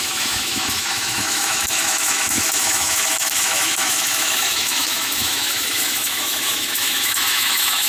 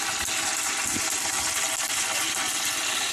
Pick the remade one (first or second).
first